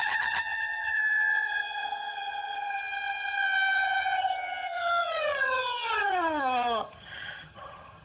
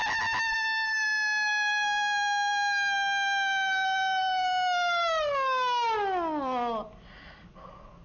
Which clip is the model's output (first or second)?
first